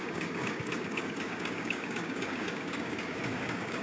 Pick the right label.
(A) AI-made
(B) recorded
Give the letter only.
A